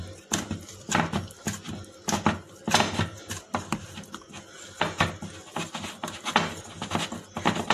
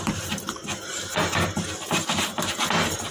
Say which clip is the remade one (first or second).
second